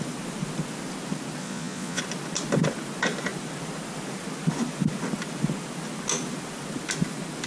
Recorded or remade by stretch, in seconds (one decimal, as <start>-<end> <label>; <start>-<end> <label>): 0.0-1.4 recorded; 1.4-2.0 remade; 2.0-7.5 recorded

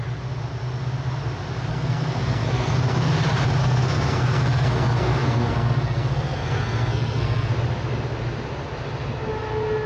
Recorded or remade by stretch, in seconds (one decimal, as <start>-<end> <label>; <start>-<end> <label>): 0.0-1.7 recorded; 1.7-3.1 remade; 3.1-3.6 recorded; 3.6-7.5 remade; 7.5-9.9 recorded

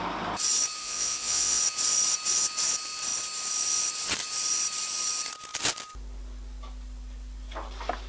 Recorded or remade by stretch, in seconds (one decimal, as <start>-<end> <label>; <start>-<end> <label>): 0.0-0.8 recorded; 0.8-1.6 remade; 1.6-8.1 recorded

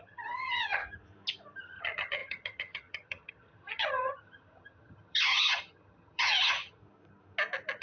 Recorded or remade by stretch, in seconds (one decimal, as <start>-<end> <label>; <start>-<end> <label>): 0.0-0.8 remade; 0.8-1.6 recorded; 1.6-6.8 remade; 6.8-7.8 recorded

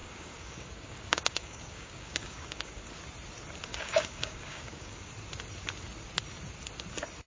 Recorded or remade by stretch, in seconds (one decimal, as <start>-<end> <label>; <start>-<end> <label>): 0.0-2.9 remade; 2.9-3.7 recorded; 3.7-5.1 remade; 5.1-7.3 recorded

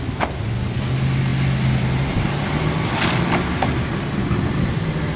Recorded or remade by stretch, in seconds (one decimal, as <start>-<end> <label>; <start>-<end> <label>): 0.0-5.2 recorded

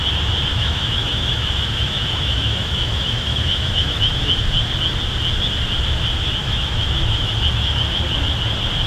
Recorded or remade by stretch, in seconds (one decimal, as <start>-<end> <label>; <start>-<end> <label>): 0.0-0.5 recorded; 0.5-4.3 remade; 4.3-6.4 recorded; 6.4-7.3 remade; 7.3-8.9 recorded

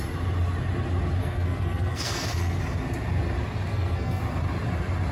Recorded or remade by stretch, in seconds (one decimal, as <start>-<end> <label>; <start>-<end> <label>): 0.0-1.2 recorded; 1.2-2.6 remade; 2.6-3.7 recorded; 3.7-4.2 remade; 4.2-5.1 recorded